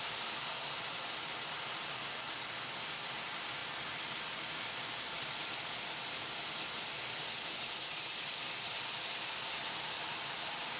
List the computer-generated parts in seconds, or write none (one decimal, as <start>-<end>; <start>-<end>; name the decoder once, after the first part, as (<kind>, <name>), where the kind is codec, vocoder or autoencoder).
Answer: 0.0-10.8 (vocoder, BigVGAN v2)